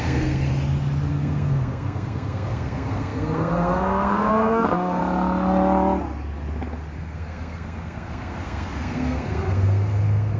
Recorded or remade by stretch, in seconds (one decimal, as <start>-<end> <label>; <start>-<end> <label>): 0.0-0.5 remade; 0.5-1.1 recorded; 1.1-5.0 remade; 5.0-7.0 recorded; 7.0-10.4 remade